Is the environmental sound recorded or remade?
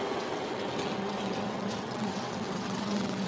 remade